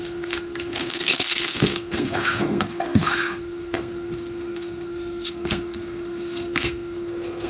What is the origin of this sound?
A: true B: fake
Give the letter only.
B